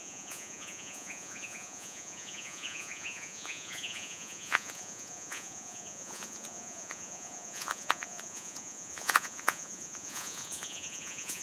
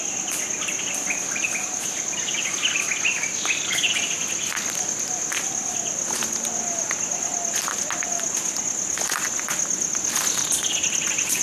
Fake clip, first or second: first